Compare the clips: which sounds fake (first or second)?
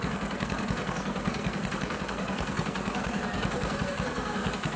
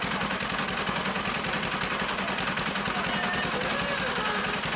first